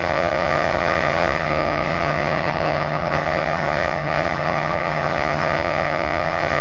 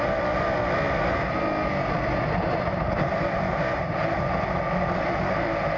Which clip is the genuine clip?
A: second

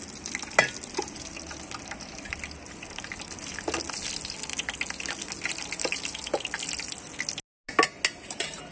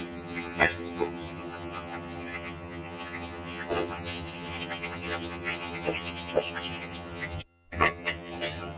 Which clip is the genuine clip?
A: first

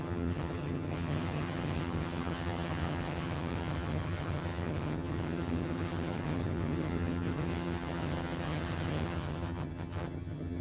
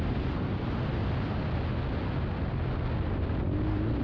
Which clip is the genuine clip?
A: second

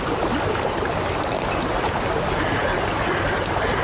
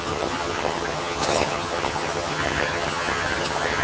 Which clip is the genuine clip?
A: first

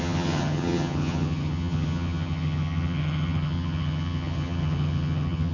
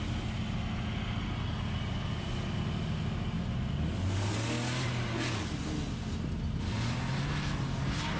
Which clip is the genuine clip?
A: second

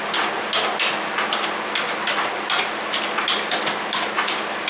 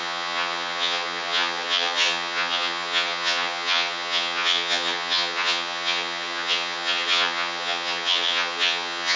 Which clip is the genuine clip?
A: first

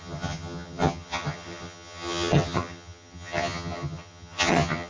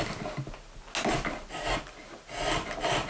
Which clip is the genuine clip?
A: second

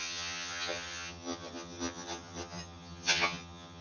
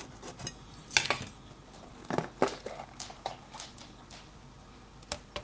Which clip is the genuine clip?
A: second